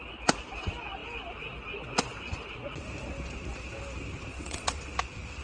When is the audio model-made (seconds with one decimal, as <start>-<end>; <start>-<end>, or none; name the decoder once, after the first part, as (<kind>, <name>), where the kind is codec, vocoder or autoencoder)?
4.3-4.9 (vocoder, WaveNeXt)